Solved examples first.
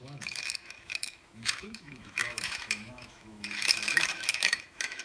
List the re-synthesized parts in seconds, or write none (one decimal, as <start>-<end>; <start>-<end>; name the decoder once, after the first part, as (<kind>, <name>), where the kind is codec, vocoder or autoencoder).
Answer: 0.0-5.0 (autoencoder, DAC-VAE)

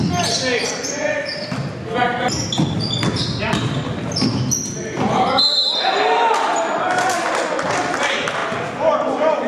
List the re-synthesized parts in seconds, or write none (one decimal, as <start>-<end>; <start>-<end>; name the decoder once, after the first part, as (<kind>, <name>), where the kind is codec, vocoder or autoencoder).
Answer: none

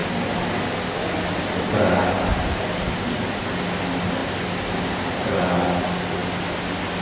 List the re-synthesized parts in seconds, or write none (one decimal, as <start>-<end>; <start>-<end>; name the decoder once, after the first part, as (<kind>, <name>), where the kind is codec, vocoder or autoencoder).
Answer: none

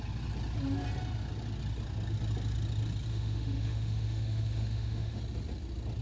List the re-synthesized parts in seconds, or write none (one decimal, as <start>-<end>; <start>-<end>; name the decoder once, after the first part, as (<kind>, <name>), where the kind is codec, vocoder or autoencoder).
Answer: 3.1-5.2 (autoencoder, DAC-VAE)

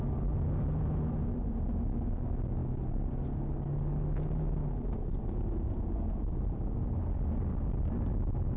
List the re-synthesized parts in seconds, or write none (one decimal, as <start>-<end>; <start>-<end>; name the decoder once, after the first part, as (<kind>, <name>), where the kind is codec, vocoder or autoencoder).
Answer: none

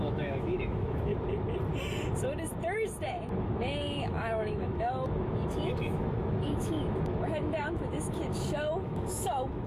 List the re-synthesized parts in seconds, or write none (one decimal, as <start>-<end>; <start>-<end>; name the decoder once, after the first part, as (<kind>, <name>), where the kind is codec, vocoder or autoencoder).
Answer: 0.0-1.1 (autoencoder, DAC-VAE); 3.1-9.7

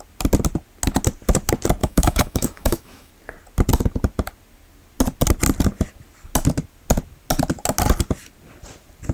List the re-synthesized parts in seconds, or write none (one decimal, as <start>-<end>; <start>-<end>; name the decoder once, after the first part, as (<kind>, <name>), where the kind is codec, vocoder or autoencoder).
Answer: 1.8-3.1 (autoencoder, DAC-VAE)

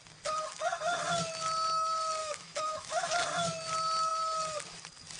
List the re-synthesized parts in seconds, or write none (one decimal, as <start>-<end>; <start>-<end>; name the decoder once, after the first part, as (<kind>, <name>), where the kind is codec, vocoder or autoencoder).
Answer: 2.2-3.1 (autoencoder, DAC-VAE)